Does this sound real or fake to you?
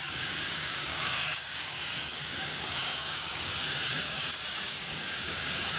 fake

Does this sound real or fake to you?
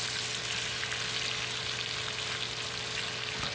real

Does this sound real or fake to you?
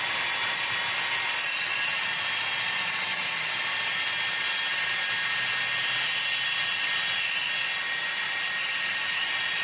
real